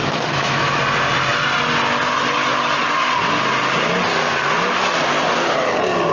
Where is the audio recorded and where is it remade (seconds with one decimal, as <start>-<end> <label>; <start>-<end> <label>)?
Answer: 0.0-0.8 remade; 0.8-6.1 recorded